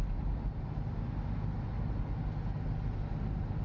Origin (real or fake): real